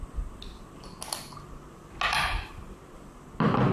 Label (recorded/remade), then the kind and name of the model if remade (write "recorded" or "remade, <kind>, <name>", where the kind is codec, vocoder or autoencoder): recorded